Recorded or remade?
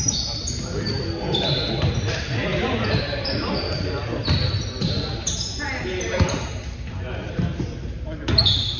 recorded